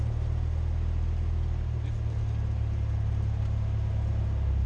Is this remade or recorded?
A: recorded